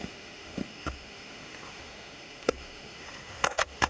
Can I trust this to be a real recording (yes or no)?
no